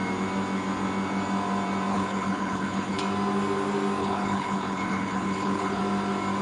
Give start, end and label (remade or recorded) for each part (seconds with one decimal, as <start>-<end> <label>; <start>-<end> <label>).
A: 0.0-1.9 recorded; 1.9-3.0 remade; 3.0-4.0 recorded; 4.0-5.8 remade; 5.8-6.4 recorded